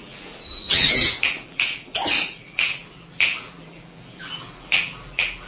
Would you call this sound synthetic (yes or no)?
yes